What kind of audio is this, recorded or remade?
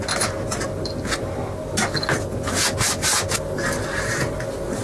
recorded